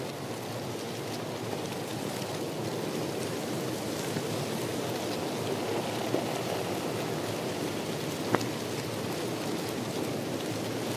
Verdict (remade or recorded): recorded